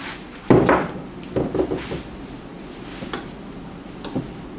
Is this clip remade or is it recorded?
recorded